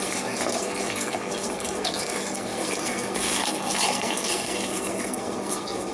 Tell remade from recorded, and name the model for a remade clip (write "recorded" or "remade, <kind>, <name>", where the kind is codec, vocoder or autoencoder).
remade, codec, SNAC